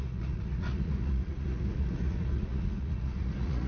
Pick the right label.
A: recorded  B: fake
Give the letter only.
B